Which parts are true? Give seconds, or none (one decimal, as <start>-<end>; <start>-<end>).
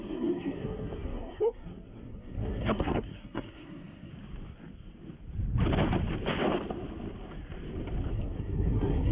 4.1-8.1